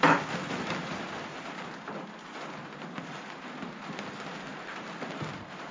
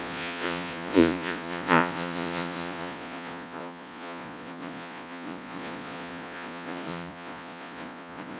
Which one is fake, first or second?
second